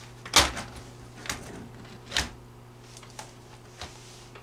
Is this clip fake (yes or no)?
no